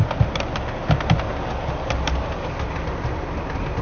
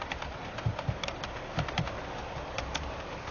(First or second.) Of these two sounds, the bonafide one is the first